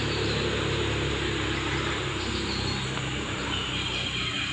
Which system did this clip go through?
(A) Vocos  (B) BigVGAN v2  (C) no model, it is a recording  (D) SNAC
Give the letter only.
B